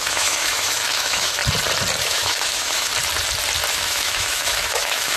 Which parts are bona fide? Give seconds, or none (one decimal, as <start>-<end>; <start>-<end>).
1.4-2.0; 2.9-3.7